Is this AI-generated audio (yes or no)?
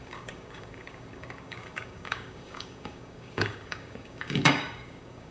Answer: yes